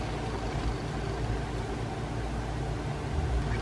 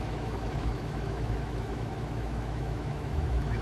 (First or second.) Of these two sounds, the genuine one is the first